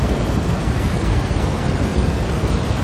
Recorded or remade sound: remade